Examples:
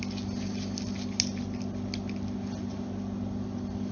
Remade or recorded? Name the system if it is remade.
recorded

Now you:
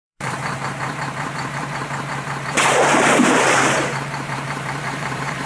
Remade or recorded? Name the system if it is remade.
remade, vocoder, BigVGAN v2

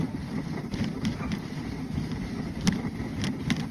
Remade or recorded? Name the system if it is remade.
remade, vocoder, BigVGAN v2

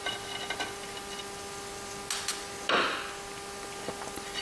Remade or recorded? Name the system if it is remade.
recorded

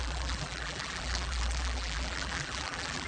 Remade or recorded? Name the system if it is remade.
remade, vocoder, BigVGAN v2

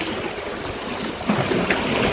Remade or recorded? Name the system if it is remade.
recorded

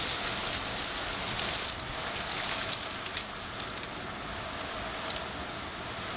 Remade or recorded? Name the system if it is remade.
recorded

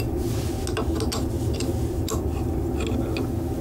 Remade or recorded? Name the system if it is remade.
recorded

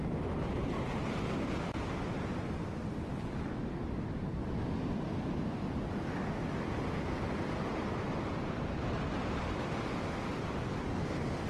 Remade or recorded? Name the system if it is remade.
recorded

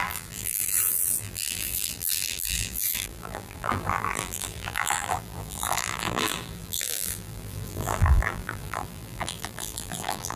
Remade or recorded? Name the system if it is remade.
remade, vocoder, BigVGAN v2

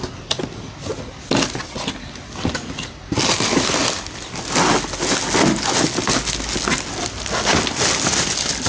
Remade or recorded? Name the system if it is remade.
recorded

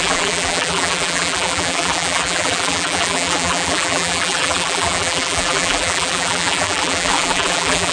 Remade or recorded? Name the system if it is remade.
remade, vocoder, BigVGAN v2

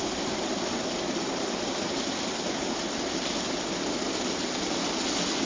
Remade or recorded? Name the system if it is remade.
recorded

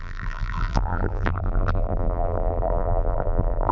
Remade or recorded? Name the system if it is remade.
remade, vocoder, BigVGAN v2